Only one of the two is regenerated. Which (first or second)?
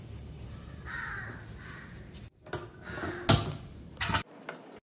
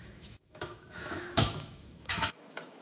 second